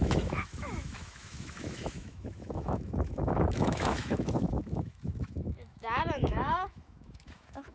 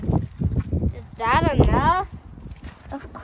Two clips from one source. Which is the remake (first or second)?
first